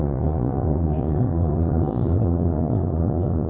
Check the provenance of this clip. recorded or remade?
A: remade